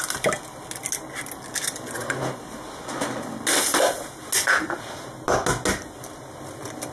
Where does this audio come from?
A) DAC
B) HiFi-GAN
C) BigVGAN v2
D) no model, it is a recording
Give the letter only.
D